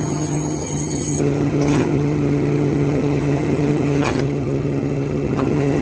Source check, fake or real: fake